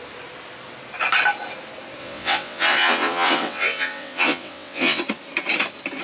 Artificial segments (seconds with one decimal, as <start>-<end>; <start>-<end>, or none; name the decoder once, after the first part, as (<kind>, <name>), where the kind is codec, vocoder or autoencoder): 2.0-5.0 (vocoder, WaveNeXt)